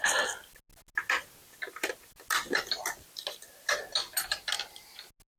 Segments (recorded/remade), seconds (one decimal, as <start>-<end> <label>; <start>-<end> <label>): 0.0-5.4 recorded